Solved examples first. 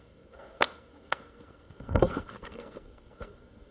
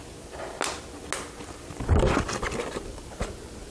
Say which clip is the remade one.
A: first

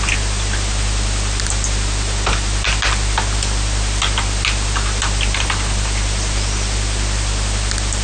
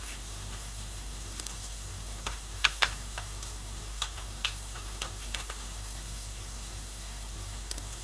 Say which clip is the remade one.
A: second